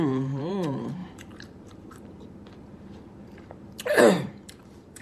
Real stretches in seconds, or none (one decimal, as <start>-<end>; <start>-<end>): none